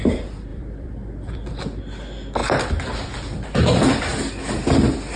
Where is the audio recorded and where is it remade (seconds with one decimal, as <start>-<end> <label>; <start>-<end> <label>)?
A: 0.0-0.5 recorded; 0.5-1.6 remade; 1.6-2.4 recorded; 2.4-4.0 remade; 4.0-5.2 recorded